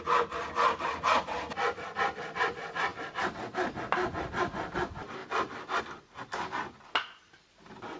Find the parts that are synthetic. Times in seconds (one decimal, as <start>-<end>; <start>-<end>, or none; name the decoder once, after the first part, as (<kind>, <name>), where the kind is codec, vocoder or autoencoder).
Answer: none